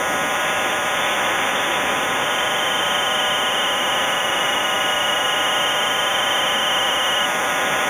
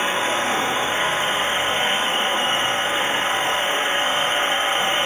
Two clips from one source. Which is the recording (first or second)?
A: first